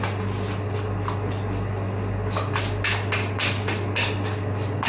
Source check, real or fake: real